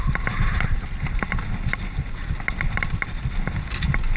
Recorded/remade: recorded